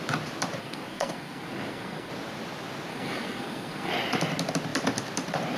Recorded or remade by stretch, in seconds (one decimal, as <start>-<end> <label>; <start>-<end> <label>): 0.0-0.6 recorded; 0.6-2.1 remade; 2.1-2.9 recorded; 2.9-3.9 remade; 3.9-5.6 recorded